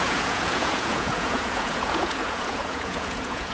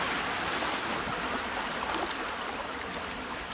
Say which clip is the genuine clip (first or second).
second